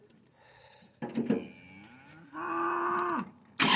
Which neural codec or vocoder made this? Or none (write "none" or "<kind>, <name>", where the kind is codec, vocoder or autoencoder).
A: none